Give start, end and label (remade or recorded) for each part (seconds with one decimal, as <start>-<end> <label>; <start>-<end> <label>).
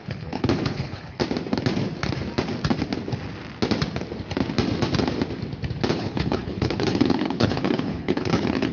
0.0-1.2 remade; 1.2-5.9 recorded; 5.9-8.7 remade